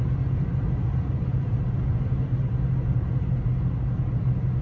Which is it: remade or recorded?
recorded